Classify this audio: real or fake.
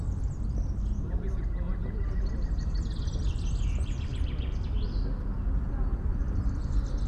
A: real